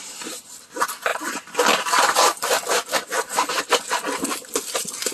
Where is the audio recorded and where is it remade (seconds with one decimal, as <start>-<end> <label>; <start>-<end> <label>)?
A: 0.0-1.1 recorded; 1.1-3.6 remade; 3.6-5.1 recorded